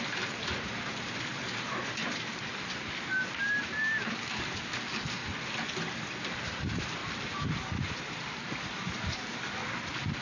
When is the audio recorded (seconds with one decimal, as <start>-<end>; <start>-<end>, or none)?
2.5-3.3; 5.2-5.9; 9.6-10.2